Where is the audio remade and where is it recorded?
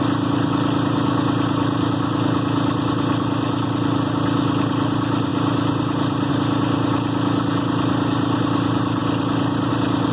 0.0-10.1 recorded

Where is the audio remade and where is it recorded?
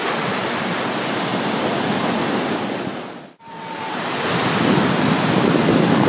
0.0-6.1 recorded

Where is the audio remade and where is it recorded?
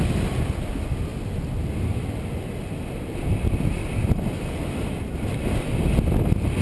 0.0-6.6 recorded